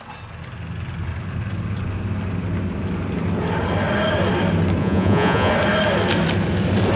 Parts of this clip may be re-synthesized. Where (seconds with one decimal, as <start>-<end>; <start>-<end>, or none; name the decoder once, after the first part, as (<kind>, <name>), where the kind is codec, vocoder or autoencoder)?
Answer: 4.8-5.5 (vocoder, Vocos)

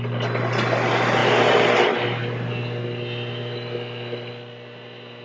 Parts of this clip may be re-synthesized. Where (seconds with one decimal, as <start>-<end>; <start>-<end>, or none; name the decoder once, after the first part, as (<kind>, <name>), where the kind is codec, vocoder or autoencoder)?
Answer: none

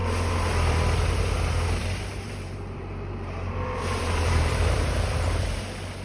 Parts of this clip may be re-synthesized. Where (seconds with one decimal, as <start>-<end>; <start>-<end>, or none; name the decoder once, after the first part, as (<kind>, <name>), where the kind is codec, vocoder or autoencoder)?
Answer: 1.8-5.4 (vocoder, BigVGAN v2)

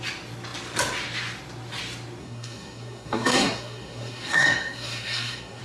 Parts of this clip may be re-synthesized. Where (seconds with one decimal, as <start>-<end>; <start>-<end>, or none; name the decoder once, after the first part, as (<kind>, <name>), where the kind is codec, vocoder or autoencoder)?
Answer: 2.2-5.6 (codec, SNAC)

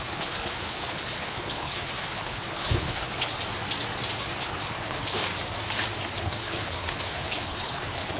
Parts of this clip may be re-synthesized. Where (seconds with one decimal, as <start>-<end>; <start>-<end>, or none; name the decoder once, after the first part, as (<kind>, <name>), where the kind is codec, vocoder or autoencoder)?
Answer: 0.0-3.3 (codec, HILCodec); 4.4-5.3; 6.2-8.2